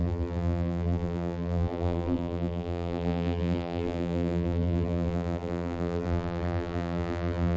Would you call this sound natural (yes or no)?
no